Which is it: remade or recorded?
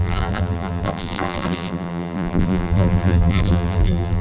remade